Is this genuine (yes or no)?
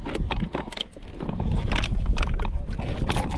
yes